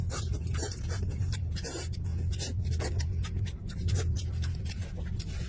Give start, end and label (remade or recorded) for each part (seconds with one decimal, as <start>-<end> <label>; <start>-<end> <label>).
0.0-2.1 remade; 2.1-3.4 recorded; 3.4-4.8 remade; 4.8-5.5 recorded